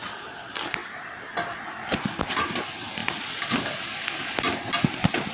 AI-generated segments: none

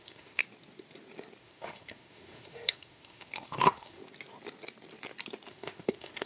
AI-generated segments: 0.0-0.4; 1.4-4.0; 5.5-6.3

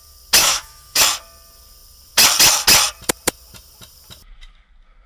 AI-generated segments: 0.4-1.0

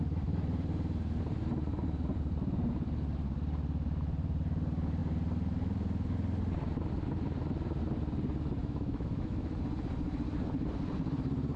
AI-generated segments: 8.6-9.5